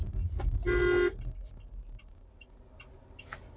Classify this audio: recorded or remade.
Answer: recorded